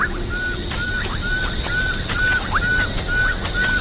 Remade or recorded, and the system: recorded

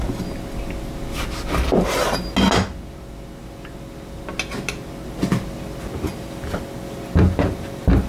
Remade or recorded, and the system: recorded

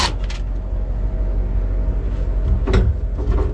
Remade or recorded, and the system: recorded